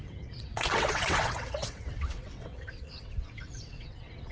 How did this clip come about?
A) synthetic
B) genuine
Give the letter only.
A